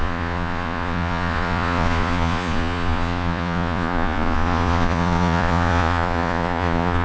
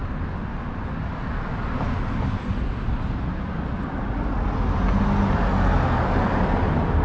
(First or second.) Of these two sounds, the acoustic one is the second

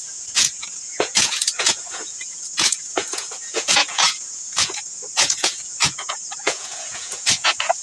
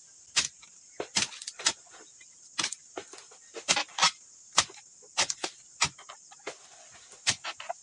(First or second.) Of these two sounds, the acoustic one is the second